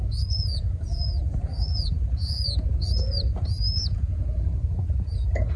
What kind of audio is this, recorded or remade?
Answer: remade